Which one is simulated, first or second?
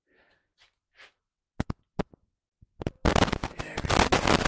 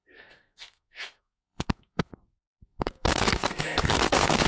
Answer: second